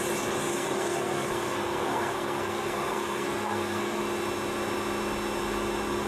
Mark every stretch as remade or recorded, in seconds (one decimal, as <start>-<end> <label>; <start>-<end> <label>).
0.0-0.5 recorded; 0.5-4.0 remade; 4.0-6.1 recorded